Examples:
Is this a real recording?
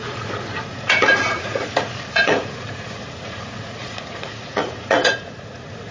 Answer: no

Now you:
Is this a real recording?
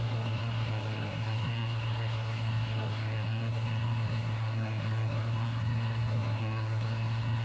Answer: no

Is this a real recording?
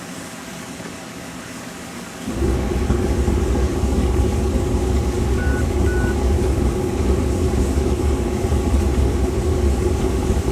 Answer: no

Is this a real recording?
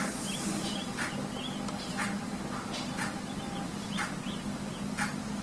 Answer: yes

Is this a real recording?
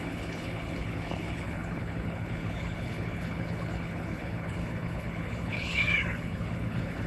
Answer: no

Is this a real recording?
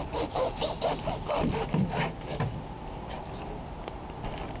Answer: yes